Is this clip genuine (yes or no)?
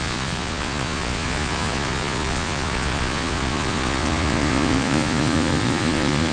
no